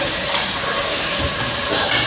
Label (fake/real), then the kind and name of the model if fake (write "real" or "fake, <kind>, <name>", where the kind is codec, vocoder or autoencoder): real